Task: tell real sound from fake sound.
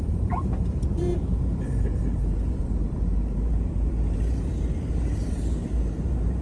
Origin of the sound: fake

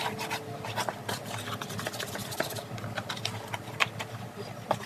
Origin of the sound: real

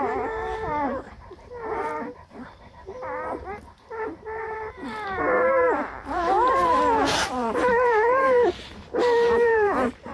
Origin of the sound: fake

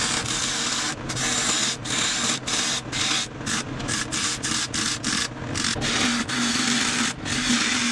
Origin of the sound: real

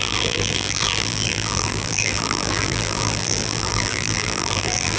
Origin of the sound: fake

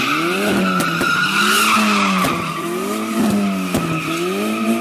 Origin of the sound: real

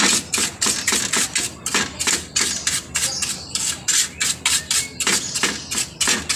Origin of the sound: real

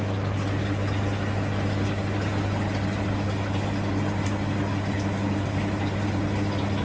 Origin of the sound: fake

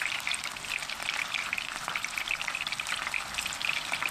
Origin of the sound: real